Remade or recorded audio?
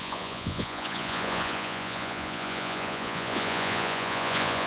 remade